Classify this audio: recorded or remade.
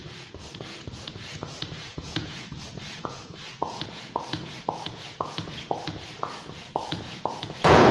remade